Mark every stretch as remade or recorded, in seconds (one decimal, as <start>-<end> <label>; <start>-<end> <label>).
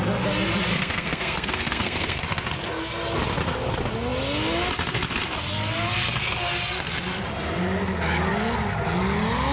0.0-0.7 recorded; 0.7-2.2 remade; 2.2-9.5 recorded